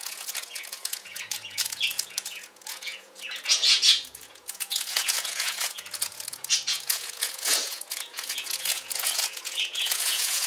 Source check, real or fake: fake